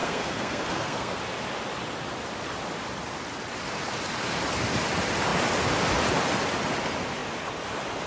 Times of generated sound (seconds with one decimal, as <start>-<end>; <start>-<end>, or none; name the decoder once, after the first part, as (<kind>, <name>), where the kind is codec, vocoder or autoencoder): 0.0-1.2 (codec, SNAC)